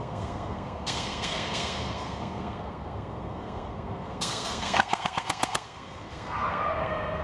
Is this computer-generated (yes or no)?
yes